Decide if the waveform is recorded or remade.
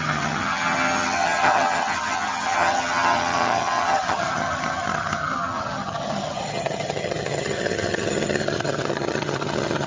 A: remade